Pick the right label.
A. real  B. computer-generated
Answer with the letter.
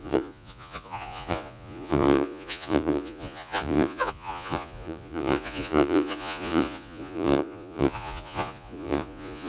B